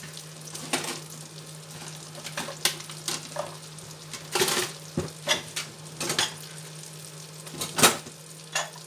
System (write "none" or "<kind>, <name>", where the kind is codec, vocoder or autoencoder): none